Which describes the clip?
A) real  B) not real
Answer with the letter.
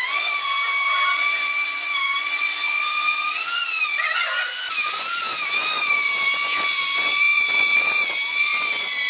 B